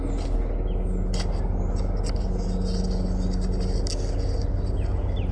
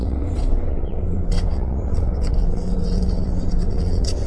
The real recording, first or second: first